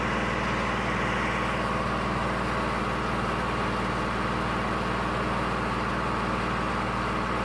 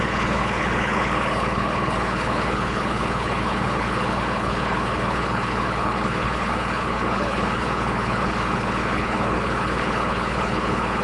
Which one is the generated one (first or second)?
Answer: second